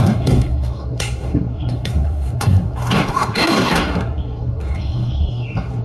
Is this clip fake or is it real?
fake